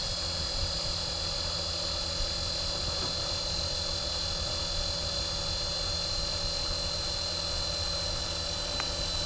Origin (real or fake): real